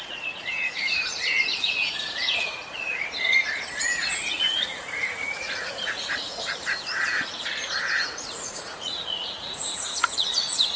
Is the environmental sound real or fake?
fake